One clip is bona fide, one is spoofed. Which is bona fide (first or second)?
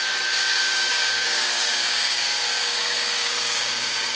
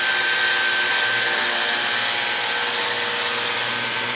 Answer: second